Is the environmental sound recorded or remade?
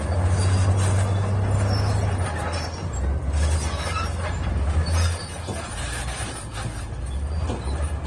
recorded